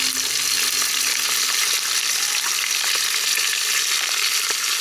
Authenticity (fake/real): real